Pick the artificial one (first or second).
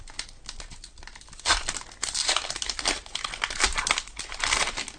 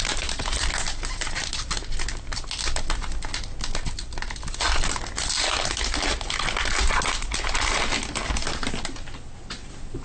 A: first